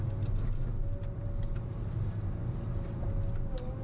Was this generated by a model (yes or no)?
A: no